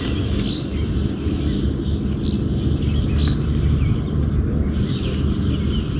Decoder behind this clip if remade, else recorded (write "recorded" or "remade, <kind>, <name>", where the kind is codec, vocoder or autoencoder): recorded